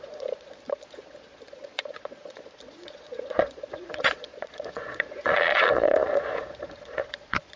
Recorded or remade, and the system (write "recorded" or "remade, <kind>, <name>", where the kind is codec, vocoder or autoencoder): remade, vocoder, Vocos